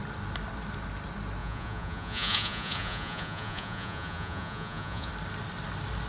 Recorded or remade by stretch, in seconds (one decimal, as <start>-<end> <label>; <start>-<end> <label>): 0.0-1.4 recorded; 1.4-5.1 remade; 5.1-6.1 recorded